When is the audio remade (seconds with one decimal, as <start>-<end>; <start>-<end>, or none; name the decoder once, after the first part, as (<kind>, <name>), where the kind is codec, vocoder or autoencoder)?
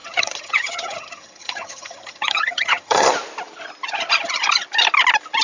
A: 0.0-3.1 (vocoder, HiFi-GAN)